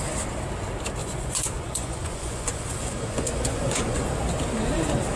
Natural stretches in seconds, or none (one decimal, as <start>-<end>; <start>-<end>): 0.0-1.0; 4.1-5.2